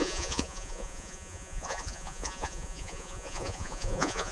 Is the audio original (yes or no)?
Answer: no